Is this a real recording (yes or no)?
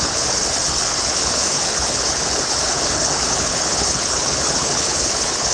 no